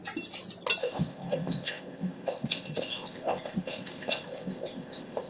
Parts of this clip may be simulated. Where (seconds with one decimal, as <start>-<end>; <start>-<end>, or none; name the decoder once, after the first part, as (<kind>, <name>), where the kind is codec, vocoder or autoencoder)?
0.8-5.3 (codec, ZipCodec)